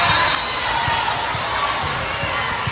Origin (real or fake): real